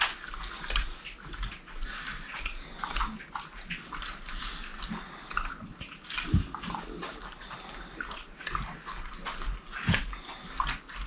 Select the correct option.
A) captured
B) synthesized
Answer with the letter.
A